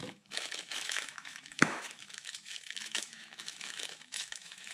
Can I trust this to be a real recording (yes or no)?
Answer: no